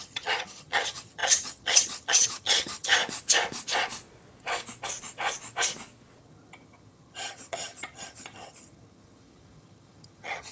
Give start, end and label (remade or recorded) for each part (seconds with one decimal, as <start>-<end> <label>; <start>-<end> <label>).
0.0-3.0 remade; 3.0-6.2 recorded; 6.2-10.5 remade

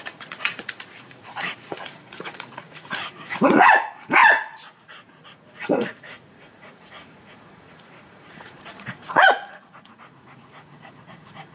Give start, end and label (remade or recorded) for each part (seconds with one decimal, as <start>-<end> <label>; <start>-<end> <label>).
0.0-11.5 remade

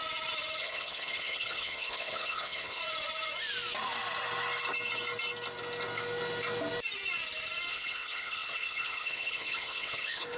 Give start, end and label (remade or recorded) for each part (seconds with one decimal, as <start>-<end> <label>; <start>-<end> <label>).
0.0-0.6 recorded; 0.6-2.8 remade; 2.8-7.7 recorded; 7.7-10.4 remade

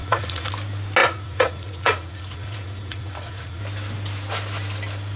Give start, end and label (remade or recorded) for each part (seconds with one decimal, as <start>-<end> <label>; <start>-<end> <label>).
0.0-0.5 remade; 0.5-1.0 recorded; 1.0-3.6 remade; 3.6-5.2 recorded

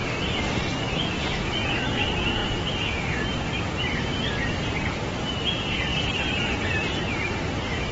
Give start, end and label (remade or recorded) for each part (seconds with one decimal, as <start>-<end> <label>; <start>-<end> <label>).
0.0-7.9 recorded

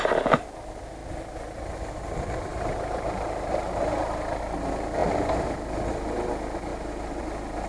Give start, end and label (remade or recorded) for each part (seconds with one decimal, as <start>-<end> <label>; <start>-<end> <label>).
0.0-2.5 recorded; 2.5-4.4 remade; 4.4-6.7 recorded; 6.7-7.2 remade; 7.2-7.7 recorded